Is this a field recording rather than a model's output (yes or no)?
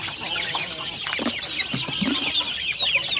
yes